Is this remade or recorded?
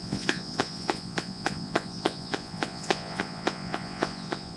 remade